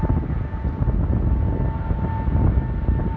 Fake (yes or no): no